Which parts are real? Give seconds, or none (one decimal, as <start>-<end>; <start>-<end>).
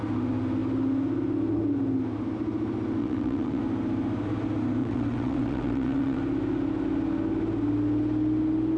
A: 0.0-3.0; 3.6-4.8; 6.2-8.8